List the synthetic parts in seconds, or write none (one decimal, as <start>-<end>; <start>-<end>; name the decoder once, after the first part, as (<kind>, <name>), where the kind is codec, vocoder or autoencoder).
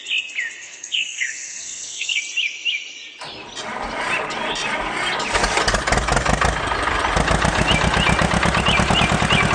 0.6-2.2 (codec, SNAC)